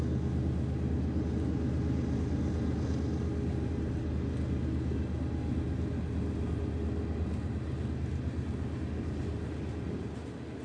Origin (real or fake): real